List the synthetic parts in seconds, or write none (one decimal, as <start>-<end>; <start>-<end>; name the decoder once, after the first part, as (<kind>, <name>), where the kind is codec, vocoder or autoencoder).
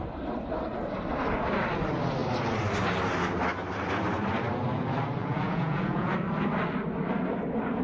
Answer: 5.2-6.1 (vocoder, Vocos)